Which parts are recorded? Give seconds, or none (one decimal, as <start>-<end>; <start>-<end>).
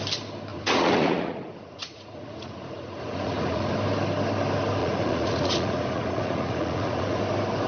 0.0-0.5; 3.7-4.8; 7.2-7.7